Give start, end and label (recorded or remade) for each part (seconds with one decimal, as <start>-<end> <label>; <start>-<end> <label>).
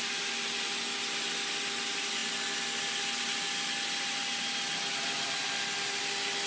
0.0-6.5 recorded